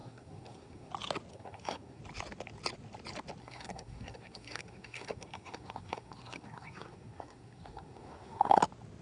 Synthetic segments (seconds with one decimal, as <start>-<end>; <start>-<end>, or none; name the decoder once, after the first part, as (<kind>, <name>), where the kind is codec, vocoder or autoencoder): 0.0-0.9 (codec, SNAC); 1.3-2.0; 3.4-8.6

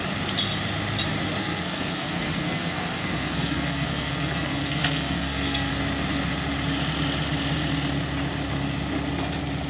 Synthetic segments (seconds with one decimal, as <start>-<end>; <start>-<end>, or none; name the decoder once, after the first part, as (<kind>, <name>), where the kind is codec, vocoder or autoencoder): 1.4-5.7 (codec, SNAC)